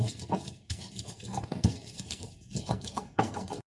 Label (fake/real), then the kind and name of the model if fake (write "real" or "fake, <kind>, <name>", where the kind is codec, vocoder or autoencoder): fake, codec, SNAC